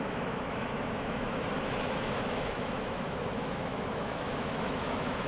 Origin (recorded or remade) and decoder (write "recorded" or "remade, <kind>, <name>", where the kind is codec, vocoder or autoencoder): remade, autoencoder, DAC-VAE